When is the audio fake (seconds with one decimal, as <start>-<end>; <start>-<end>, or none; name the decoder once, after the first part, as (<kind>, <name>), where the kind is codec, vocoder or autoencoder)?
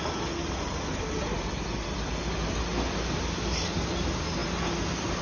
none